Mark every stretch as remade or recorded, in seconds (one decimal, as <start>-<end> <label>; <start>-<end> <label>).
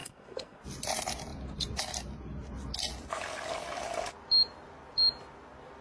0.0-0.6 remade; 0.6-5.8 recorded